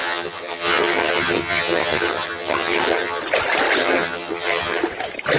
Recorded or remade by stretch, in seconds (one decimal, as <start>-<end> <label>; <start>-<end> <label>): 0.0-3.2 remade; 3.2-3.8 recorded; 3.8-4.8 remade; 4.8-5.4 recorded